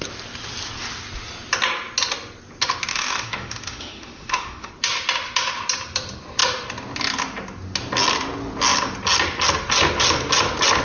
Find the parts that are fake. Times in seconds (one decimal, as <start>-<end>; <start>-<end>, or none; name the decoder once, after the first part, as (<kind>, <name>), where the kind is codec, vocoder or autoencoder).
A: 2.9-4.7 (autoencoder, DAC-VAE)